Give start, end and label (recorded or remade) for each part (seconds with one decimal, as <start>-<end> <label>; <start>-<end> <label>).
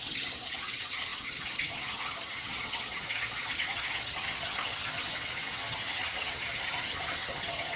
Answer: 0.0-7.8 remade